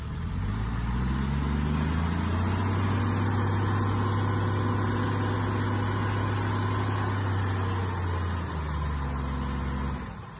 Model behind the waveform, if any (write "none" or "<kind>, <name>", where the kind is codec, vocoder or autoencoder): none